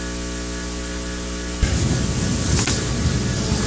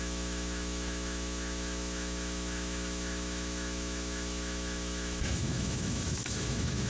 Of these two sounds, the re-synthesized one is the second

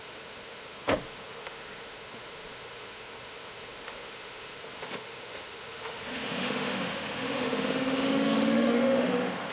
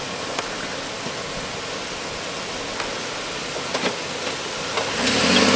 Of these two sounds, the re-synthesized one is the first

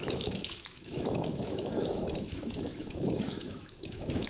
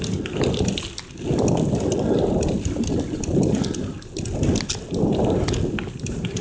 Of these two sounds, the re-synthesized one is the first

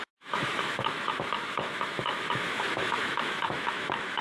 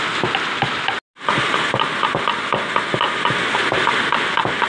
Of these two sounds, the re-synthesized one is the first